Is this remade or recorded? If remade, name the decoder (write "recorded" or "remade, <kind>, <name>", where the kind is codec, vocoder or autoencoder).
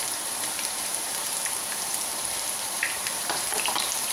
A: remade, vocoder, BigVGAN v2